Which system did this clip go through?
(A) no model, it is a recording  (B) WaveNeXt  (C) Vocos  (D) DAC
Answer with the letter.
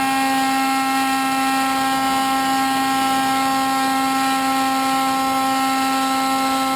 A